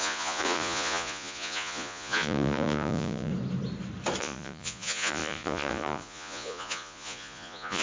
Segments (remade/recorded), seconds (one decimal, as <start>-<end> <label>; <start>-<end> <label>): 0.0-3.3 remade; 3.3-4.2 recorded; 4.2-7.8 remade